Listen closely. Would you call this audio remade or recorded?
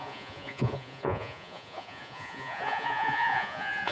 remade